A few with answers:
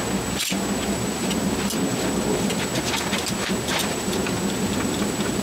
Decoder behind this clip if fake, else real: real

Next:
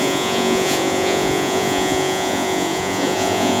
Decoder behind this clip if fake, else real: fake, vocoder, Vocos